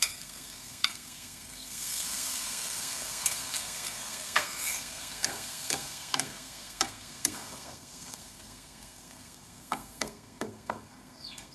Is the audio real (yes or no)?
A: no